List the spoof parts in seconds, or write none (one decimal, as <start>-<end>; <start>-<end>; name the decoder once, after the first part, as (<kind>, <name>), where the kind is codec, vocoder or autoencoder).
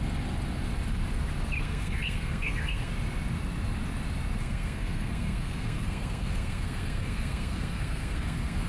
1.6-2.9 (codec, SNAC); 4.4-8.7